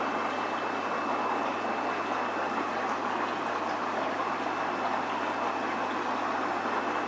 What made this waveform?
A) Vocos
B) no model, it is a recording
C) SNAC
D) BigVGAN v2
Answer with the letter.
B